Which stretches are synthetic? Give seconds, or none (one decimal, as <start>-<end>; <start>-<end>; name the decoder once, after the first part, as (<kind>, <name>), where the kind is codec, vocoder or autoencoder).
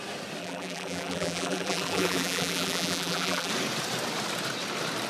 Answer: 0.4-3.5 (vocoder, BigVGAN v2)